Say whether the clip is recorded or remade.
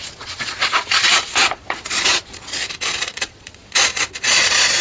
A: remade